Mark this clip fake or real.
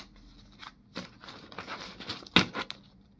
real